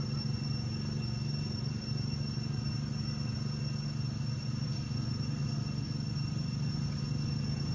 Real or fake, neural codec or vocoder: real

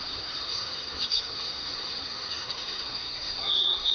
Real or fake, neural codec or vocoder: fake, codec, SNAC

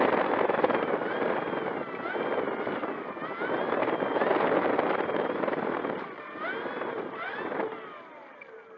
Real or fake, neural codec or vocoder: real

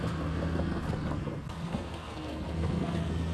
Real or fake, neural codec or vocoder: fake, codec, SNAC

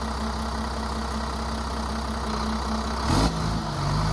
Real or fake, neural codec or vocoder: real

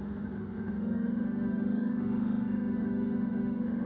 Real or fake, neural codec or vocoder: fake, autoencoder, DAC-VAE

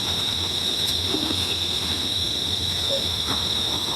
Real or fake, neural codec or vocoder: fake, autoencoder, DAC-VAE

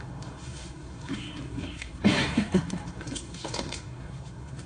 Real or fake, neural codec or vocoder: fake, codec, SNAC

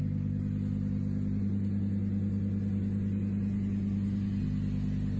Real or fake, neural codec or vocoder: real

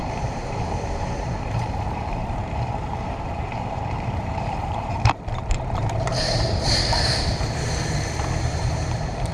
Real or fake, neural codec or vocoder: fake, vocoder, BigVGAN v2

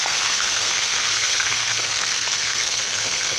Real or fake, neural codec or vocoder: fake, codec, SNAC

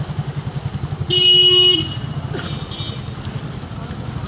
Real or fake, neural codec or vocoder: real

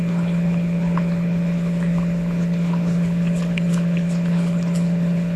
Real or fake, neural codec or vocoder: fake, codec, HILCodec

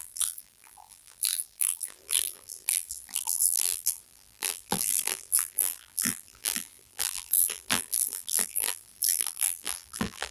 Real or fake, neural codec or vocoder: fake, vocoder, BigVGAN v2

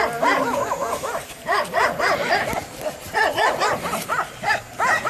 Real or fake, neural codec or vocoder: fake, vocoder, BigVGAN v2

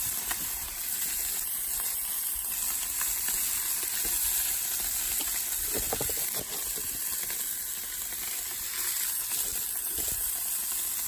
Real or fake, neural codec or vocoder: real